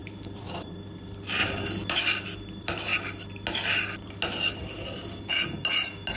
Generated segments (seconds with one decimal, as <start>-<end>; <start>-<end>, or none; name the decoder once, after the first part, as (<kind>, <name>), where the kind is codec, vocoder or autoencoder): 0.0-0.8 (vocoder, BigVGAN v2)